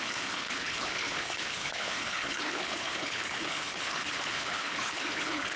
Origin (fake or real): fake